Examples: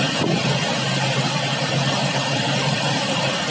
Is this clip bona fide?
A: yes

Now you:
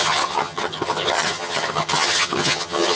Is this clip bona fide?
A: no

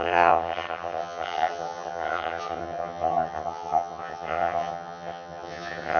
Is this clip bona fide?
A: no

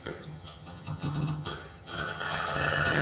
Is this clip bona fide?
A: no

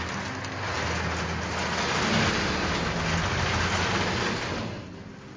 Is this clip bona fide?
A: yes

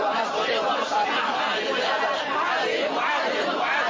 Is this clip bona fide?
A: yes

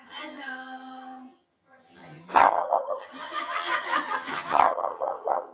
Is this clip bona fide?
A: no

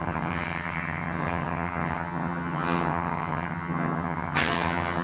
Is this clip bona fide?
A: no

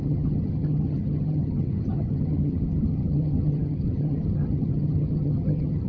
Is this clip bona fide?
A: no